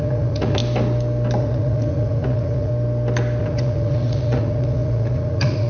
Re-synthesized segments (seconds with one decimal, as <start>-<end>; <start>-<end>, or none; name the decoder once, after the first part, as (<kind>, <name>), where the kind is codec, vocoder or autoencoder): 0.0-0.6 (vocoder, Vocos); 1.4-2.7; 3.4-5.7